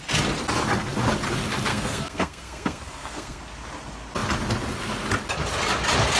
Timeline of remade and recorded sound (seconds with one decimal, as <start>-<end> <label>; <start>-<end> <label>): 0.0-1.7 recorded; 1.7-3.4 remade; 3.4-6.2 recorded